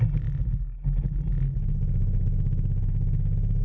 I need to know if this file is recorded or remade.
recorded